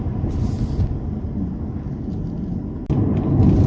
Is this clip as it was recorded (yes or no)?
yes